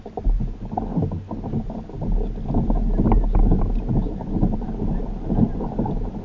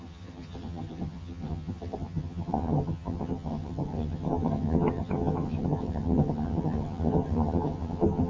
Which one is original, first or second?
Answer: first